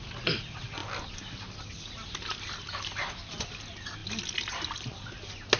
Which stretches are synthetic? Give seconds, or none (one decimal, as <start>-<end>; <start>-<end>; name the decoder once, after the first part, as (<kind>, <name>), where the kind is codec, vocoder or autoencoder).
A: 0.8-3.6 (vocoder, BigVGAN v2); 4.0-5.1